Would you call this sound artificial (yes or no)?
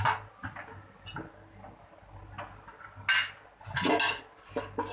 no